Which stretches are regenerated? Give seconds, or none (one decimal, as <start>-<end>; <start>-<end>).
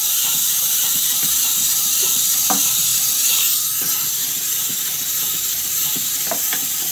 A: 0.0-2.9; 5.7-6.9